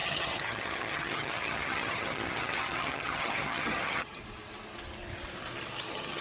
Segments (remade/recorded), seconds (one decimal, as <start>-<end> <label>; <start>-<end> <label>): 0.0-4.2 remade; 4.2-5.8 recorded; 5.8-6.2 remade